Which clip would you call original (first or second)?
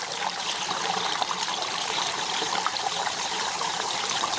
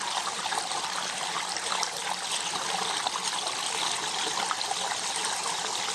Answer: second